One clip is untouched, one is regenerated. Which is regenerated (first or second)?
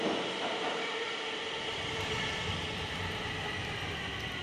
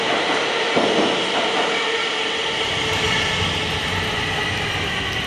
first